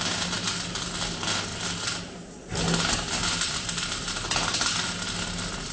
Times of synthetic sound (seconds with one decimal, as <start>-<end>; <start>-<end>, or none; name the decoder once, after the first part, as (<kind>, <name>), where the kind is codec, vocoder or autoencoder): none